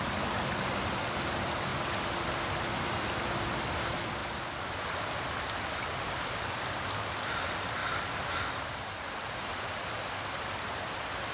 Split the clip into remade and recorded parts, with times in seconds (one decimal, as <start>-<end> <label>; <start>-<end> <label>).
0.0-1.7 remade; 1.7-3.7 recorded; 3.7-4.2 remade; 4.2-6.4 recorded; 6.4-11.3 remade